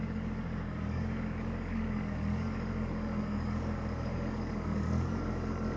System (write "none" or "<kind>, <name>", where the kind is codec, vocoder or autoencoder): codec, DAC